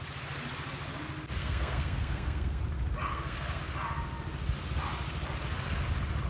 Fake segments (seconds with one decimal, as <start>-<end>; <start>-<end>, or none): 1.4-2.6; 3.1-3.6